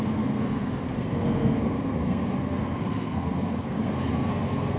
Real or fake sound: fake